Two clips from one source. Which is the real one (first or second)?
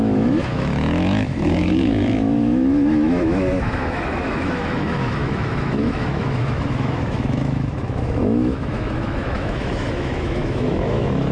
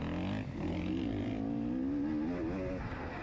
second